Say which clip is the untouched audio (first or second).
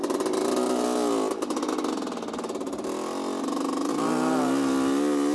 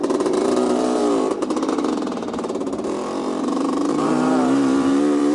first